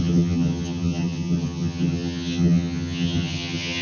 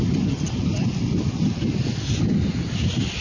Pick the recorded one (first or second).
second